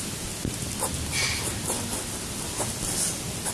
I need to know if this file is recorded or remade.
recorded